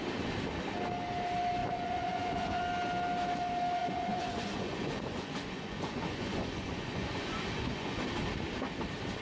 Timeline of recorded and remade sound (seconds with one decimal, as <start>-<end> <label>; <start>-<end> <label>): 0.0-1.6 recorded; 1.6-2.6 remade; 2.6-3.8 recorded; 3.8-8.0 remade; 8.0-9.2 recorded